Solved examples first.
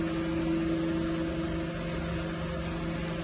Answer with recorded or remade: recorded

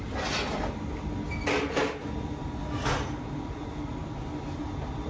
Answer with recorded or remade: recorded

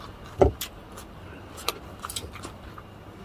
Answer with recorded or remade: recorded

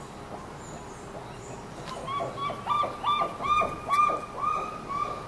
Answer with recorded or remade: recorded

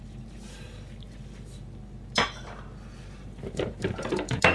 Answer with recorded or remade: remade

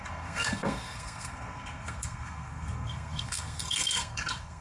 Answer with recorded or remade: remade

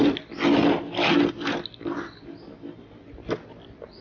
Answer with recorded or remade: recorded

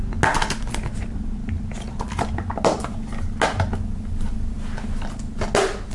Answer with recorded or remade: recorded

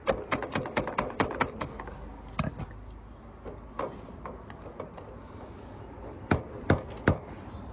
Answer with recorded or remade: recorded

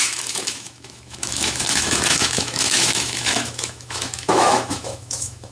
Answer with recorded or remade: remade